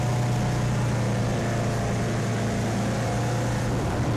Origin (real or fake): real